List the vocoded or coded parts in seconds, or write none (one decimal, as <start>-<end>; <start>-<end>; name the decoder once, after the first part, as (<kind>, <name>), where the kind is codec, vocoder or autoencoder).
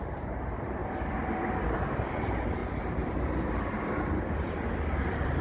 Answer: 0.0-0.8 (vocoder, BigVGAN v2); 1.7-2.6; 5.0-5.4